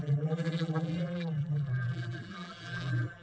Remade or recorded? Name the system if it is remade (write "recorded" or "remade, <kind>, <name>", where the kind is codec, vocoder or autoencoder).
remade, vocoder, BigVGAN v2